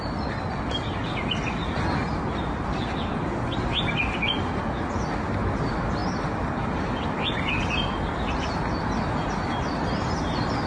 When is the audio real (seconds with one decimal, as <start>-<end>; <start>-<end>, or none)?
0.0-10.7